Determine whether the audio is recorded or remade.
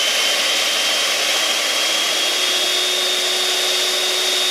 recorded